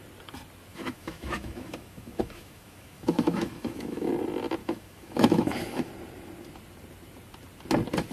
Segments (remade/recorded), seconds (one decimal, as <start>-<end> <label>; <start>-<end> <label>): 0.0-0.7 recorded; 0.7-4.1 remade; 4.1-4.6 recorded; 4.6-5.9 remade; 5.9-8.1 recorded